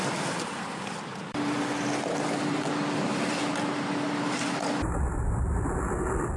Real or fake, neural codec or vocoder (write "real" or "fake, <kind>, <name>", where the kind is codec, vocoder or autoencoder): fake, vocoder, BigVGAN v2